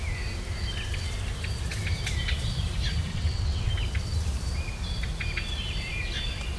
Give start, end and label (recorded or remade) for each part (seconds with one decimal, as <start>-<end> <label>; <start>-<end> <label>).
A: 0.0-3.1 recorded; 3.1-3.7 remade; 3.7-6.6 recorded

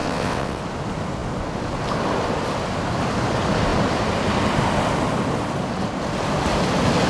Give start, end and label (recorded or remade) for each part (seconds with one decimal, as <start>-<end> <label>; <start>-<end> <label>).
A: 0.0-0.6 remade; 0.6-7.1 recorded

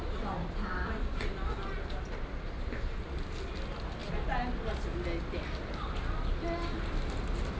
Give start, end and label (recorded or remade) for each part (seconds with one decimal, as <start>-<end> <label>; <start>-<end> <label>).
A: 0.0-7.6 recorded